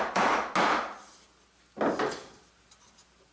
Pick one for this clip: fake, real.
real